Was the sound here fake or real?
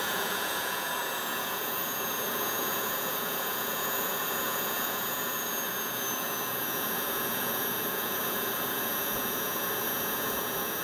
fake